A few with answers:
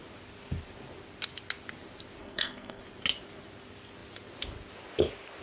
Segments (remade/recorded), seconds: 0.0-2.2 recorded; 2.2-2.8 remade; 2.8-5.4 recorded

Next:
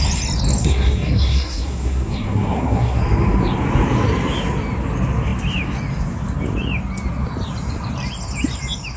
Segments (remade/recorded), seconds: 0.0-0.6 recorded; 0.6-3.0 remade; 3.0-9.0 recorded

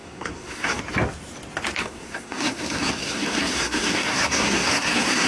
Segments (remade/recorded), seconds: 0.0-0.8 remade; 0.8-1.8 recorded; 1.8-5.3 remade